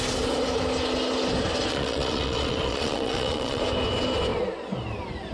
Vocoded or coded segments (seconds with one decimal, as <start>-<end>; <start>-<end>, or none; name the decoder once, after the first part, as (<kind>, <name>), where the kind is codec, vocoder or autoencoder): 1.7-3.6 (vocoder, Vocos)